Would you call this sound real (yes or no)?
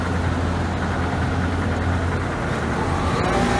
yes